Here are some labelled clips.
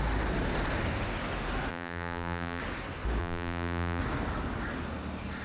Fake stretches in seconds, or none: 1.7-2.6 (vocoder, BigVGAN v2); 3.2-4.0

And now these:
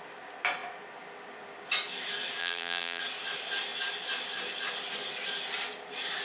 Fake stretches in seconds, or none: 2.4-3.0 (vocoder, BigVGAN v2)

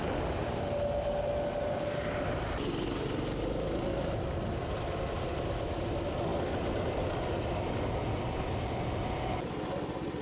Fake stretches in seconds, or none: none